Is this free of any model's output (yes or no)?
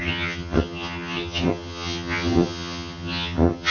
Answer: no